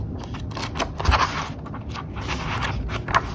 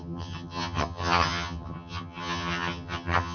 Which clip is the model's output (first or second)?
second